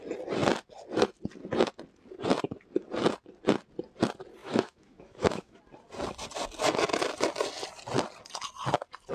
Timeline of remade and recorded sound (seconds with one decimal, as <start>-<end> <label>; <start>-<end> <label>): 0.0-4.4 recorded; 4.4-5.6 remade; 5.6-9.1 recorded